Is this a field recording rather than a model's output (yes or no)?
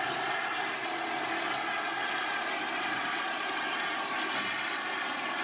yes